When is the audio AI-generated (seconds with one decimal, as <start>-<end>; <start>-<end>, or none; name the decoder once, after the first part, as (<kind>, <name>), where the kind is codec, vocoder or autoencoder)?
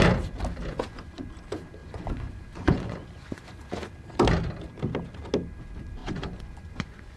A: 0.7-1.3 (vocoder, Vocos); 1.8-3.9; 6.0-7.2